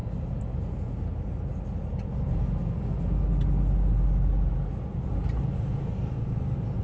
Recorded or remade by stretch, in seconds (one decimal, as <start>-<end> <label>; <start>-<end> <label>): 0.0-6.8 recorded